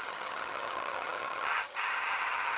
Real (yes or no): no